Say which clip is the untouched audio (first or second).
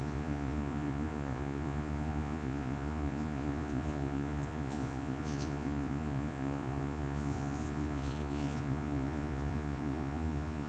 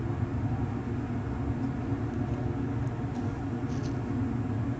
second